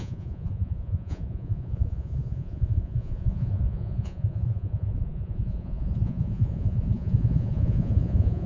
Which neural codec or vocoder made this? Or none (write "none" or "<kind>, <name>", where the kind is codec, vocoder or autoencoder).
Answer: vocoder, Vocos